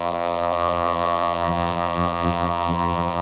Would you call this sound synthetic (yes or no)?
yes